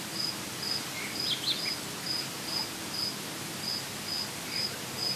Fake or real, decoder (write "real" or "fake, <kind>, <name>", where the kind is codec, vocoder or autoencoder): real